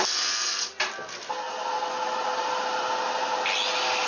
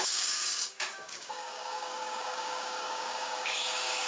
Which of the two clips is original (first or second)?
first